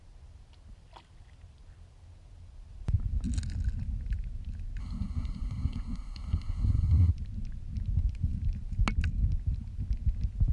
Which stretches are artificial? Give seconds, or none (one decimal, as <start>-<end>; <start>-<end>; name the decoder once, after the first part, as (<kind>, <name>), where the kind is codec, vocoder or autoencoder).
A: 4.8-7.1 (codec, SNAC)